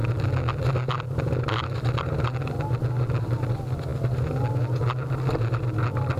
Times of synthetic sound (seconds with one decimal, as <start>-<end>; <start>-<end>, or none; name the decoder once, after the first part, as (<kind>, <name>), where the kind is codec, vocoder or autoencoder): none